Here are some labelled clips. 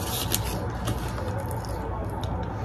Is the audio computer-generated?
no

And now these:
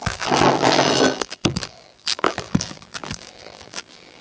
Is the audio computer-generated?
yes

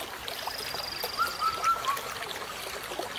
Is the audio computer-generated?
yes